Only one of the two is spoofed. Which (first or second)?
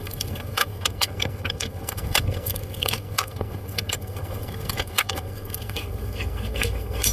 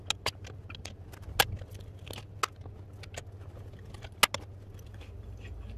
first